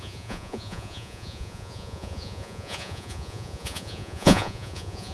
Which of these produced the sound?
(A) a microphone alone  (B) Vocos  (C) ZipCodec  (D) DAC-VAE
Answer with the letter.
B